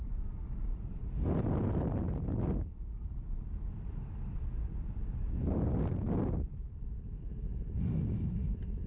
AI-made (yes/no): no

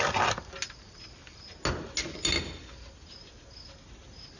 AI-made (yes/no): no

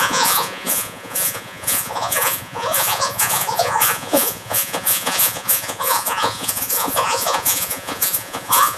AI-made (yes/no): yes